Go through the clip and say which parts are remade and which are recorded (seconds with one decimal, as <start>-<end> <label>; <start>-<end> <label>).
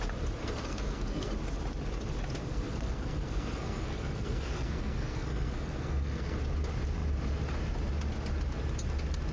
0.0-0.4 recorded; 0.4-1.3 remade; 1.3-2.4 recorded; 2.4-6.4 remade; 6.4-9.3 recorded